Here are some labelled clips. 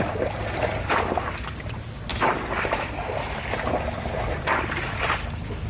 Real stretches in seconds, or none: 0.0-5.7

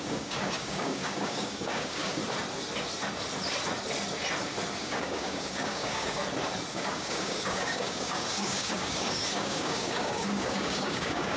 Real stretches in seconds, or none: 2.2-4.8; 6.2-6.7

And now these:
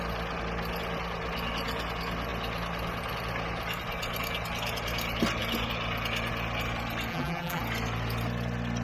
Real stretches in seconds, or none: 0.0-7.1; 7.6-8.8

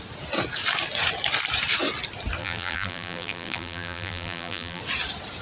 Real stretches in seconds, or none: 0.0-2.4; 4.8-5.4

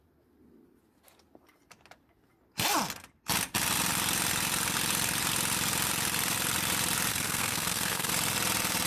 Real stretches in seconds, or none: 0.0-7.1; 8.1-8.9

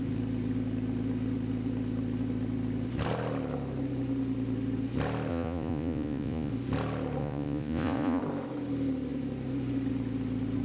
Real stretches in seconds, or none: 0.0-5.3; 6.5-7.2; 8.2-10.6